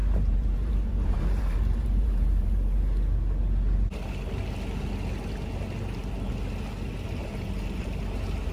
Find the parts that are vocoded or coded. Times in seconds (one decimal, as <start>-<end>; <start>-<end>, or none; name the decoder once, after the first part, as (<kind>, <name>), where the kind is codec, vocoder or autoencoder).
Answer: 0.0-2.8 (vocoder, BigVGAN v2); 7.2-8.5